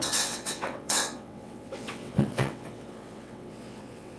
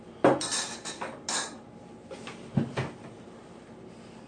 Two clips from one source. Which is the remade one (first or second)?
first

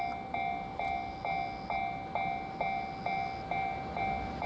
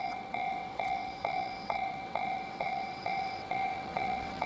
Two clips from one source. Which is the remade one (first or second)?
second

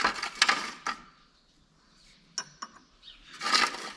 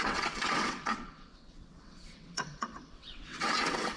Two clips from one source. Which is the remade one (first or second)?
second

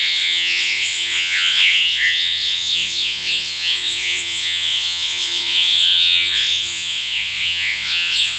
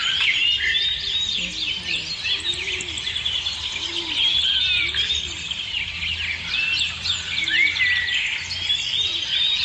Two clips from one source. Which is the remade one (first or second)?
first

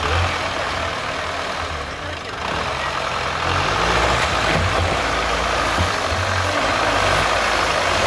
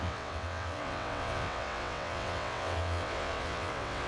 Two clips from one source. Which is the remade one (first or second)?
second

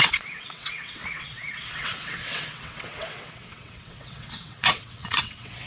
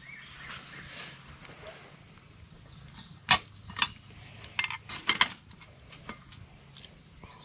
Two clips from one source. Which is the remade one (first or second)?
first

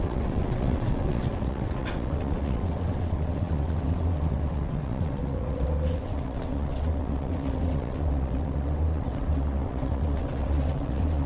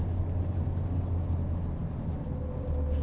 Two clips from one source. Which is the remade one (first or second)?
first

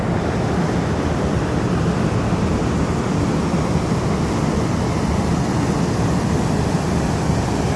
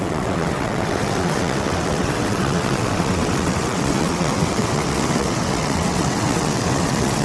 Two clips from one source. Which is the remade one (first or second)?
second